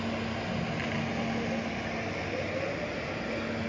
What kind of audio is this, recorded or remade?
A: recorded